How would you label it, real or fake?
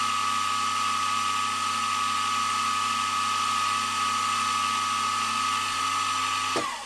real